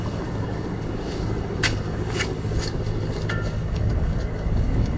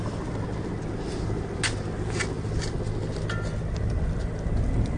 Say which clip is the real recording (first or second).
second